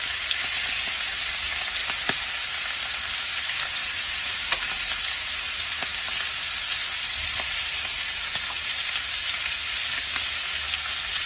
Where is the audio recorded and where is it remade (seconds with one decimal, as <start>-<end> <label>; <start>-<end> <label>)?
0.0-3.8 recorded; 3.8-4.4 remade; 4.4-11.3 recorded